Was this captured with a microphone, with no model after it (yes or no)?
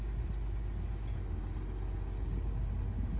yes